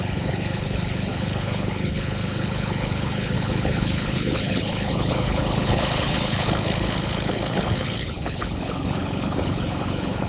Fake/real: fake